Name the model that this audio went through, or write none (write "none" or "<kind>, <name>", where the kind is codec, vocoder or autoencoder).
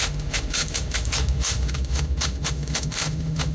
autoencoder, DAC-VAE